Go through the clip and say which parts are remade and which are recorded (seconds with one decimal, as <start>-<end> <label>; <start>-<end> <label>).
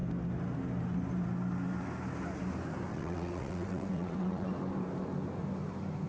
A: 0.0-2.9 recorded; 2.9-4.5 remade; 4.5-6.1 recorded